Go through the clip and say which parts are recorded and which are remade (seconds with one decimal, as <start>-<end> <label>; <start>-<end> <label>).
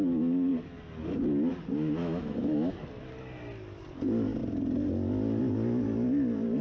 0.0-2.0 recorded; 2.0-2.7 remade; 2.7-6.6 recorded